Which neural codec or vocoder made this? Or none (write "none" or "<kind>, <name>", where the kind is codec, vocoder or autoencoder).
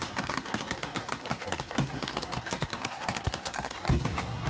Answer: codec, SNAC